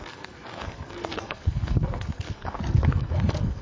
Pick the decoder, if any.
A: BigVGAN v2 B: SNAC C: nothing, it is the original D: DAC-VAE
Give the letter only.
B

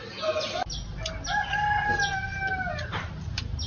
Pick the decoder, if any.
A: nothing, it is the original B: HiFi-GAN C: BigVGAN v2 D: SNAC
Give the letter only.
A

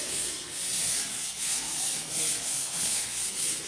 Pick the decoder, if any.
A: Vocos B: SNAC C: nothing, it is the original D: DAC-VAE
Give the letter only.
B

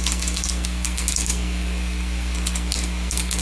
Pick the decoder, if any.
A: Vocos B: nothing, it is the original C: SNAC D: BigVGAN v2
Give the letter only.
C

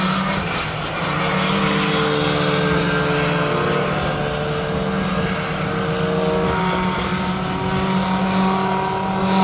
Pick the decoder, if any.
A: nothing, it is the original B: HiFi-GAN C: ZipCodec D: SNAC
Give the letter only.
A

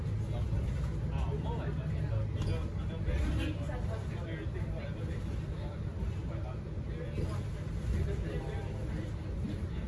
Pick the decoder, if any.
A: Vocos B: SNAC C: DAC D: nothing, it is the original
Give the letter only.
D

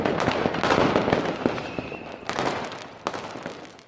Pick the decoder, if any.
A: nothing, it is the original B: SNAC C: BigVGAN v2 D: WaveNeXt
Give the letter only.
A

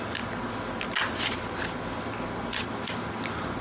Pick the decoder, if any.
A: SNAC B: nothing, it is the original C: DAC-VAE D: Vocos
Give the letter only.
B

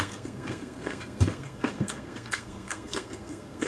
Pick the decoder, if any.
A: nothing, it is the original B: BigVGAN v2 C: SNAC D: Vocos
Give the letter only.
C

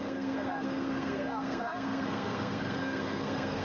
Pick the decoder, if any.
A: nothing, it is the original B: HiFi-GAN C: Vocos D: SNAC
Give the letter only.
D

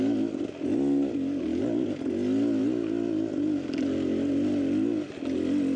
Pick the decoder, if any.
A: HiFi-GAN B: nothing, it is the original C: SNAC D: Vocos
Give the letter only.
B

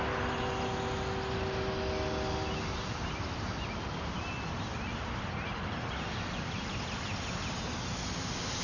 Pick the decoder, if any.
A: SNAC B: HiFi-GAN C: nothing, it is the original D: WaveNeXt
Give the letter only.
C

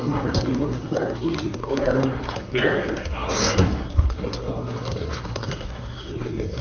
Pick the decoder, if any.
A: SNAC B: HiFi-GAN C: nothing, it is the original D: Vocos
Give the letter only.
A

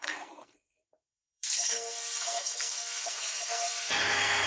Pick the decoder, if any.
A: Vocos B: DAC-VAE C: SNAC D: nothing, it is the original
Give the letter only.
C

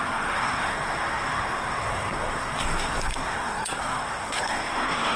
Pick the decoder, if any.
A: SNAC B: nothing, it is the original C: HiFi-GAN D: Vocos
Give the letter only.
A